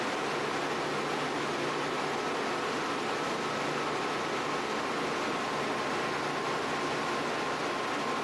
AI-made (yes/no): no